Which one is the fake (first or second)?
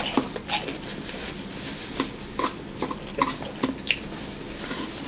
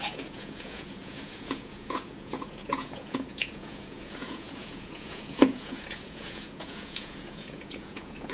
second